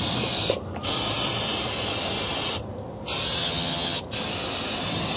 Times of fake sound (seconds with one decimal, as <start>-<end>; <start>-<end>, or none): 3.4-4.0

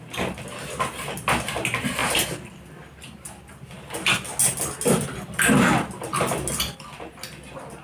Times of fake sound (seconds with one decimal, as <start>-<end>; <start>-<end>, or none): none

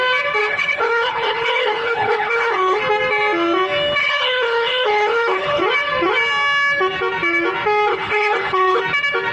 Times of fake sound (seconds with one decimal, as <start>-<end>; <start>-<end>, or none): 0.4-2.8; 4.0-5.6; 7.9-8.8

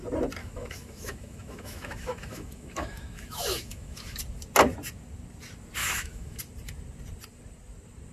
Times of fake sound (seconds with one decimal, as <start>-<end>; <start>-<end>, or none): 0.4-4.2; 5.8-6.4

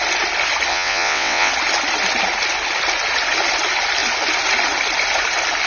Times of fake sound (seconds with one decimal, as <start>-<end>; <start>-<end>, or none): 0.7-1.5

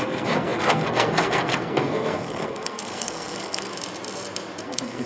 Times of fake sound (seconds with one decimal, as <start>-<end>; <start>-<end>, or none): 0.0-3.7; 4.6-5.1

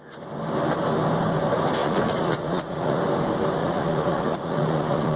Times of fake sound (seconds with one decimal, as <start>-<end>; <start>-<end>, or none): 1.8-3.0; 3.6-5.2